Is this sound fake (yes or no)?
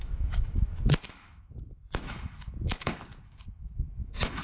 yes